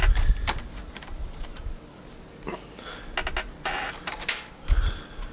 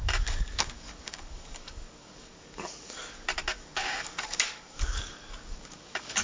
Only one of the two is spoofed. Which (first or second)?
second